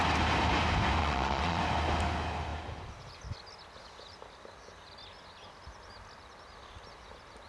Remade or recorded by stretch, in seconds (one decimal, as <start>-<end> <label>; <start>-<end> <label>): 0.0-1.0 recorded; 1.0-1.6 remade; 1.6-7.5 recorded